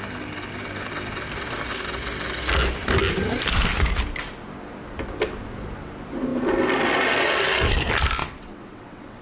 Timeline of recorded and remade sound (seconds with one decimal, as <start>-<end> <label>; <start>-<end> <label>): 0.0-8.2 recorded; 8.2-9.2 remade